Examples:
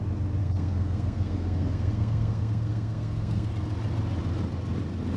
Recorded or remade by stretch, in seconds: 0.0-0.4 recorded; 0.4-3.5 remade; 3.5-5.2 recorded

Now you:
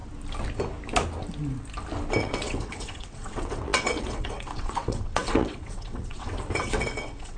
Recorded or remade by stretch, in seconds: 0.0-2.2 recorded; 2.2-7.4 remade

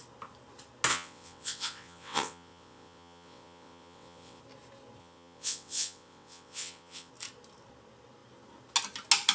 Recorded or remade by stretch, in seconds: 0.0-0.9 recorded; 0.9-4.4 remade; 4.4-5.0 recorded; 5.0-7.1 remade; 7.1-9.3 recorded

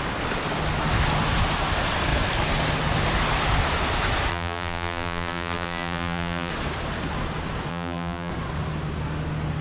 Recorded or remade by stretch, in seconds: 0.0-4.3 recorded; 4.3-6.5 remade; 6.5-7.7 recorded; 7.7-8.3 remade; 8.3-9.6 recorded

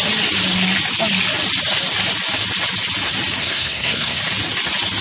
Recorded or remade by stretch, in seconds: 0.0-3.4 recorded; 3.4-4.2 remade; 4.2-5.0 recorded

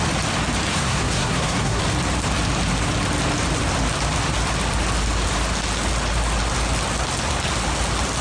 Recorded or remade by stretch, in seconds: 0.0-0.7 recorded; 0.7-1.8 remade; 1.8-8.2 recorded

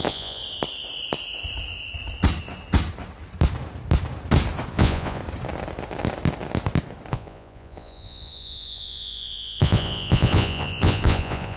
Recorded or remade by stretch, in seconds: 0.0-0.4 remade; 0.4-4.7 recorded; 4.7-5.2 remade; 5.2-7.1 recorded; 7.1-11.6 remade